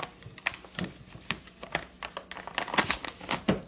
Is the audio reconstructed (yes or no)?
no